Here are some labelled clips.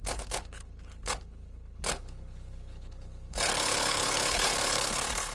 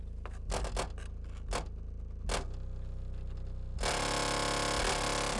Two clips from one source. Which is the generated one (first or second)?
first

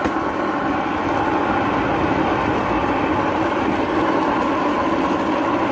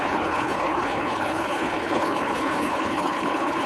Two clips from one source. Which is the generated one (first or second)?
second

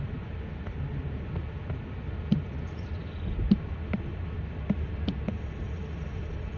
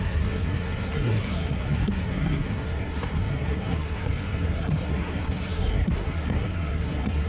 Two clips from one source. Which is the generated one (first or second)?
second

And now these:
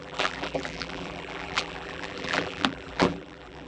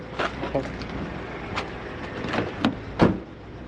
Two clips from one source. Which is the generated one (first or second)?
first